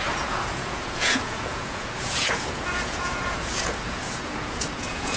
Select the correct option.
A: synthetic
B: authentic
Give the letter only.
A